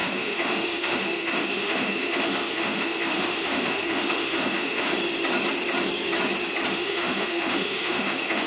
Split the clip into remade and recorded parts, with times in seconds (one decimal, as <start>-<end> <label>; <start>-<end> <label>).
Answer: 0.0-4.9 remade; 4.9-6.7 recorded; 6.7-8.5 remade